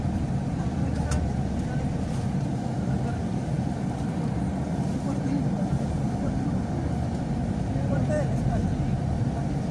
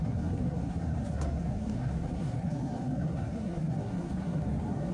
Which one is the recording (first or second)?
first